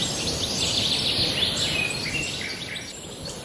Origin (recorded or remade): remade